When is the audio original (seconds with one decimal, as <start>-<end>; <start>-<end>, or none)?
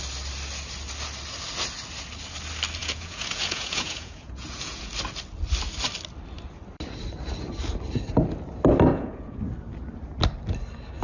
0.0-2.8; 4.9-8.9; 9.4-11.0